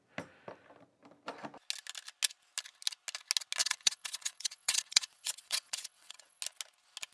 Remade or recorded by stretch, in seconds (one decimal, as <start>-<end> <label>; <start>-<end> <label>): 0.0-3.6 recorded; 3.6-6.4 remade; 6.4-7.1 recorded